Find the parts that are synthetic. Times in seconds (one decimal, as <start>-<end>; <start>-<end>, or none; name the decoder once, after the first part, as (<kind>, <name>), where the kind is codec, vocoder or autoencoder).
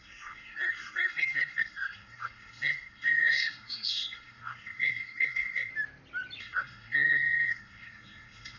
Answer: 0.0-5.7 (codec, SNAC); 6.4-8.6